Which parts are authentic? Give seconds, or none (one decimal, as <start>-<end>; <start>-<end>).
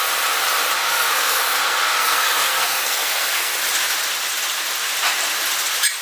0.0-0.8; 3.5-6.0